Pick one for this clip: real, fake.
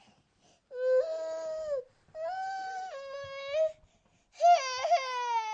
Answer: real